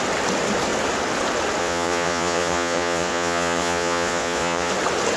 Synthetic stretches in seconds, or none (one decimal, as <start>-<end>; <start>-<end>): 1.6-4.7